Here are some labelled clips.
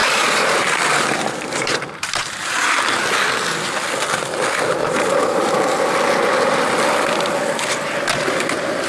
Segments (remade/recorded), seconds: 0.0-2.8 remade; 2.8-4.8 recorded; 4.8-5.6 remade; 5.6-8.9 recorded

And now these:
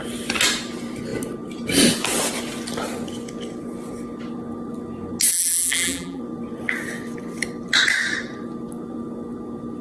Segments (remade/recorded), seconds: 0.0-5.3 recorded; 5.3-6.2 remade; 6.2-9.8 recorded

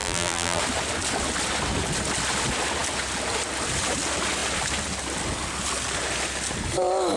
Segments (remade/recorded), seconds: 0.0-0.6 remade; 0.6-7.2 recorded

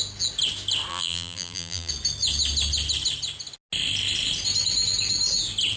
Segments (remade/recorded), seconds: 0.0-0.9 recorded; 0.9-1.9 remade; 1.9-5.8 recorded